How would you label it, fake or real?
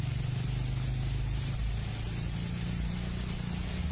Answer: real